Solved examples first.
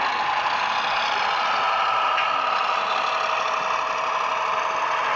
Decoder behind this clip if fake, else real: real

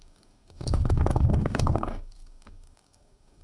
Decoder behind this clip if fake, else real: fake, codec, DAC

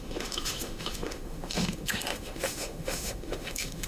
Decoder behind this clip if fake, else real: fake, autoencoder, DAC-VAE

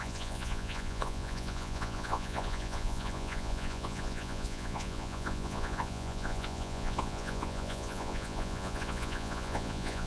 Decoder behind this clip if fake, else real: fake, vocoder, Vocos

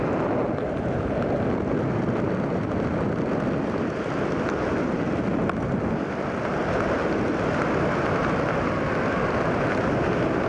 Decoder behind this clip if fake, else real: real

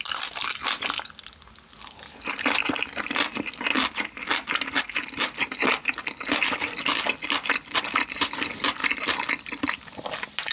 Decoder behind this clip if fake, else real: real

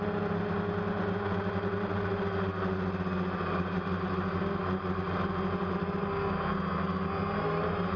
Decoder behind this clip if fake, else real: real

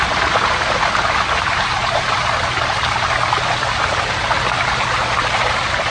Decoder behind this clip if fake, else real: fake, vocoder, BigVGAN v2